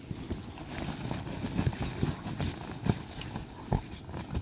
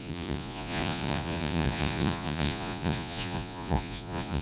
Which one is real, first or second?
first